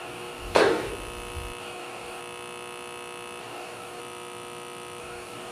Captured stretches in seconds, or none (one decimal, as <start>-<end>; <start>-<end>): 0.9-1.6; 2.2-3.4; 4.0-5.0